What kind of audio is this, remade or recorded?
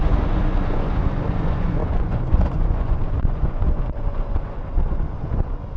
remade